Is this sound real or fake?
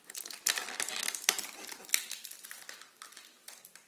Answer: real